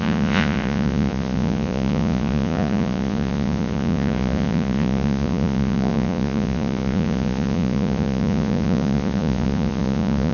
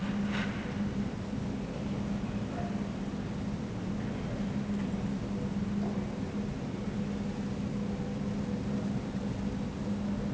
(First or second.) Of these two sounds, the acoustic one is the second